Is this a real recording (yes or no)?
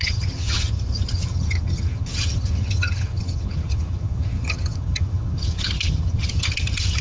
no